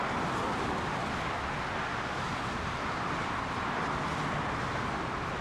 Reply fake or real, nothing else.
real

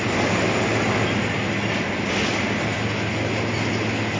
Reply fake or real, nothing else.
real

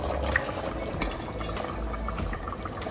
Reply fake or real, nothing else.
real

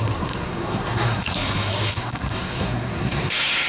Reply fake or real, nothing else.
fake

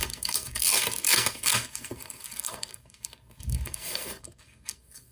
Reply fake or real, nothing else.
fake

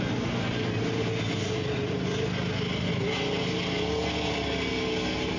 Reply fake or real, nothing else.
real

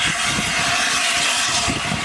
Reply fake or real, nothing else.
real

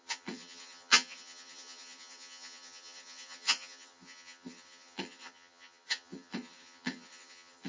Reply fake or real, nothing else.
fake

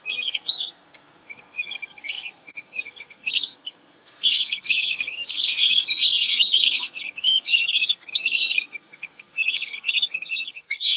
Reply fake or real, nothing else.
fake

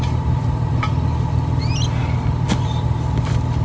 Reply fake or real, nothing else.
real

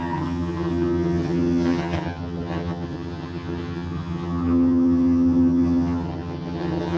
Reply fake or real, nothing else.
fake